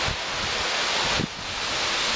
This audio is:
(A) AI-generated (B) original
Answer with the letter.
B